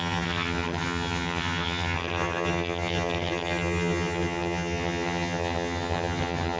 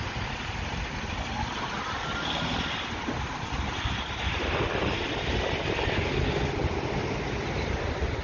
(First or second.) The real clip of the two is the second